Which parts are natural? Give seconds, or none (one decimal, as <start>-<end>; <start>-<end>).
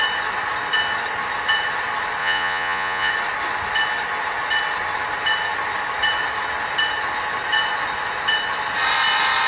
0.0-2.2; 3.1-9.5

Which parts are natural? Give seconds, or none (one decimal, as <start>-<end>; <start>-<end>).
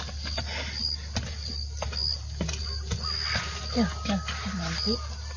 0.0-5.4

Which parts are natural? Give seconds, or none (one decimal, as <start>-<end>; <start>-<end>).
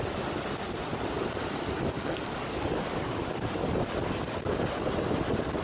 0.0-5.6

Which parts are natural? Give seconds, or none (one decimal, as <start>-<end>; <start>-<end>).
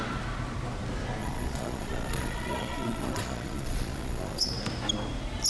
0.0-1.2; 4.5-5.5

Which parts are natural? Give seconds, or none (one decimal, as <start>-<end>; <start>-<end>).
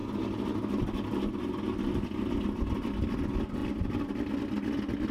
0.0-5.1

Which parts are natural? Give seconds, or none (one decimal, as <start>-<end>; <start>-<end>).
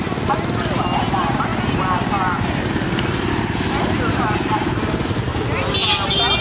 0.0-6.4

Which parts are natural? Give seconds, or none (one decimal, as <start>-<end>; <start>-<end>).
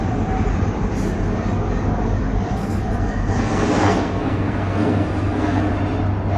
0.0-2.6; 5.7-6.4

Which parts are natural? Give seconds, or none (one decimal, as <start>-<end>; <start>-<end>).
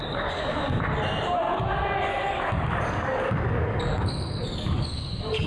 0.8-2.1